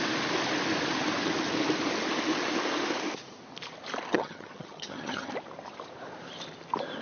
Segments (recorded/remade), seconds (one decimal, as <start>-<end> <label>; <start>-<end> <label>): 0.0-4.1 recorded; 4.1-5.3 remade; 5.3-7.0 recorded